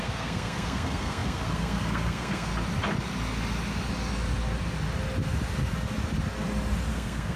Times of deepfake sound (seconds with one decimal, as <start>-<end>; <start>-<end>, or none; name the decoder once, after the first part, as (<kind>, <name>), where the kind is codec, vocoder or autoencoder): 0.0-2.5 (codec, SNAC); 6.9-7.4

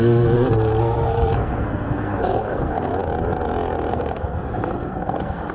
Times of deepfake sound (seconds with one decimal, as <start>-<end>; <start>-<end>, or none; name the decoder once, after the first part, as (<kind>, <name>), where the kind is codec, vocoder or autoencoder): 0.0-2.9 (codec, SNAC); 3.9-5.5